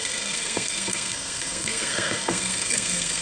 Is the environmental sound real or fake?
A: fake